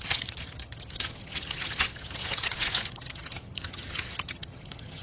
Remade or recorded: remade